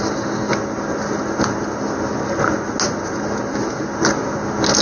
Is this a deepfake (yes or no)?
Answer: no